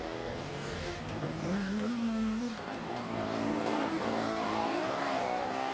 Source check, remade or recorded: remade